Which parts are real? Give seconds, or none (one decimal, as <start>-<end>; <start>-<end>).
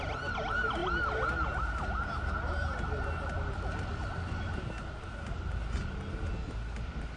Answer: 0.0-7.2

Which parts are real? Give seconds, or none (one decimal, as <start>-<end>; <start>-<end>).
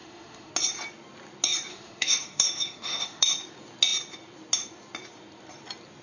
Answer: 0.5-1.7; 3.2-6.0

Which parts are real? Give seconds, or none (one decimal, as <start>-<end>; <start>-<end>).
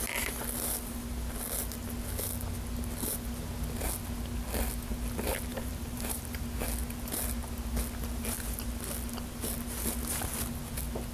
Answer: 0.0-5.5; 6.4-11.1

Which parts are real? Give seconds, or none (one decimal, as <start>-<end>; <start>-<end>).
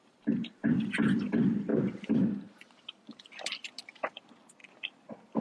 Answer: 1.7-4.0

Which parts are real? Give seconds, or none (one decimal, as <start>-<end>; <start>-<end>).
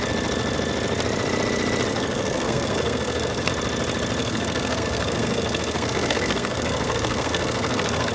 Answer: 0.0-1.9; 3.5-4.2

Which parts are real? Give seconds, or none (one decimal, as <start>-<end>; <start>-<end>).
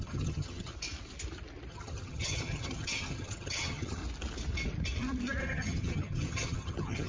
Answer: 0.7-1.7; 4.0-5.4